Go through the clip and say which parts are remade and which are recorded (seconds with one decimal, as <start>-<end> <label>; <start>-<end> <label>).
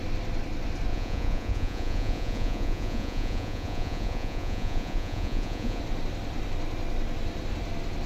0.0-0.9 recorded; 0.9-5.8 remade; 5.8-8.1 recorded